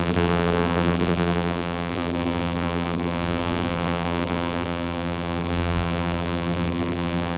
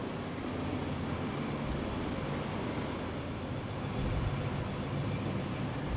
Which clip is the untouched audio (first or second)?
second